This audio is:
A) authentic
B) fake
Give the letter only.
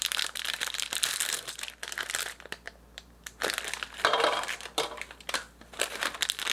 B